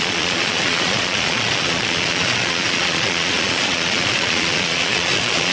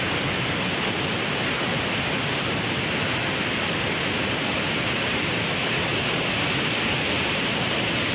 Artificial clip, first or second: first